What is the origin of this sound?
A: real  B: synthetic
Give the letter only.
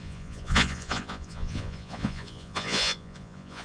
B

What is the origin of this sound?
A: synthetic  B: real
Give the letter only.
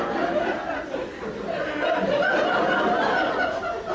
B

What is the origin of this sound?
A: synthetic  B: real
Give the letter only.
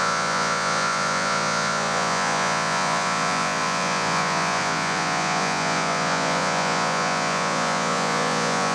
A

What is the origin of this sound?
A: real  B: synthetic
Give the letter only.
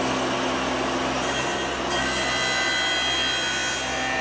A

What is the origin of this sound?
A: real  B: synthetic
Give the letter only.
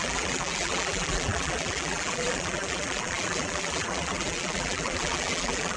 B